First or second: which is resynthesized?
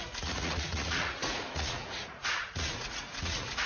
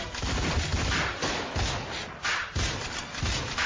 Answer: first